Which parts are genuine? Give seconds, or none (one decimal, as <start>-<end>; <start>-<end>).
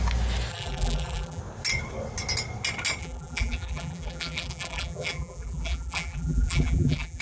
0.0-0.5; 1.4-3.0